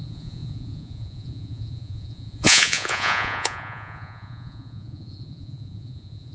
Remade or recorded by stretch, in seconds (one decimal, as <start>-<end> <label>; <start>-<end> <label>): 0.0-6.3 remade